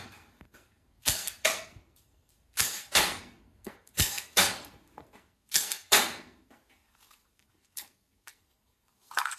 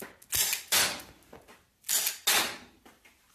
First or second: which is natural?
second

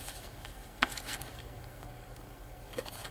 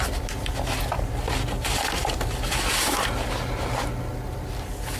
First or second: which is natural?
second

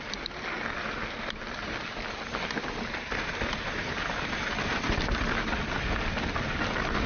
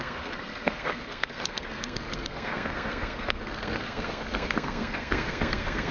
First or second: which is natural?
first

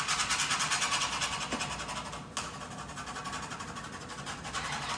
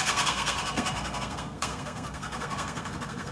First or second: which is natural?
first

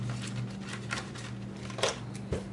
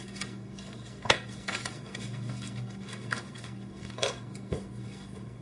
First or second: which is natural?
first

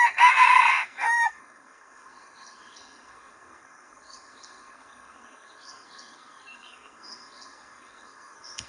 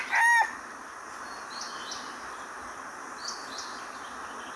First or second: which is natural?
second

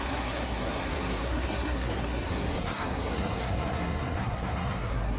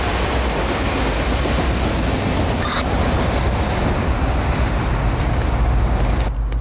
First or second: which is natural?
second